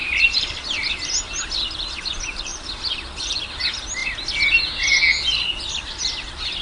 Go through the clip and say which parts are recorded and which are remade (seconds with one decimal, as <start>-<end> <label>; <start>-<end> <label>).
0.0-0.6 remade; 0.6-2.5 recorded; 2.5-3.6 remade; 3.6-6.6 recorded